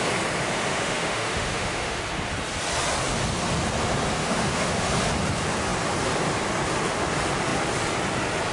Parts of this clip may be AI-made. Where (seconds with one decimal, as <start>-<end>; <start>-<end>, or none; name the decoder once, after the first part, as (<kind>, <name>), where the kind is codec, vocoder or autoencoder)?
0.7-2.0 (autoencoder, DAC-VAE); 4.2-4.9